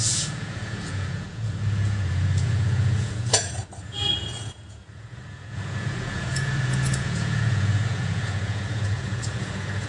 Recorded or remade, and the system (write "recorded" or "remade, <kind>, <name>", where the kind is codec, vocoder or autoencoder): remade, vocoder, Vocos